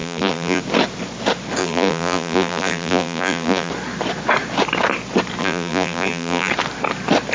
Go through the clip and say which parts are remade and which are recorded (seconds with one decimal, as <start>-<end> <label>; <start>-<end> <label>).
0.0-0.6 remade; 0.6-1.6 recorded; 1.6-3.7 remade; 3.7-5.4 recorded; 5.4-6.5 remade; 6.5-7.3 recorded